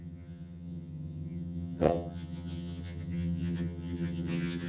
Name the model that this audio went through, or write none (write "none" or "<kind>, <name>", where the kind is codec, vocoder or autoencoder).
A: vocoder, HiFi-GAN